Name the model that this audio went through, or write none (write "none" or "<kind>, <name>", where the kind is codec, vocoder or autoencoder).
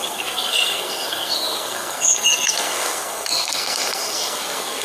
codec, SNAC